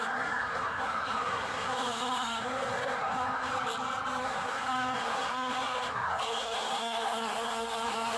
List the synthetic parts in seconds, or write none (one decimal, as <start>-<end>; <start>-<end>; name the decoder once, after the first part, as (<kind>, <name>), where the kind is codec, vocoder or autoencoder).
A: 0.0-3.5 (codec, SNAC); 4.2-8.2